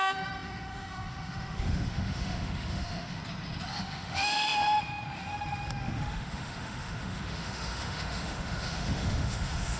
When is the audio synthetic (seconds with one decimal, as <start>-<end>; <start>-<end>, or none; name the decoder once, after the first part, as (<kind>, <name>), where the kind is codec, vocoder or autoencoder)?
0.0-3.2 (autoencoder, DAC-VAE); 3.8-9.8

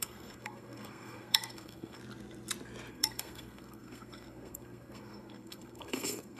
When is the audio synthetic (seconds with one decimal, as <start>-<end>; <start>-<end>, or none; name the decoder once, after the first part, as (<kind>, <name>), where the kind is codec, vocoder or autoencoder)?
0.0-2.0 (codec, SNAC); 2.9-6.4